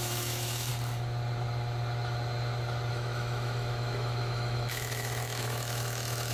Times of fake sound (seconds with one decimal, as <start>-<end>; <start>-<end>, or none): 0.0-0.7; 2.9-6.3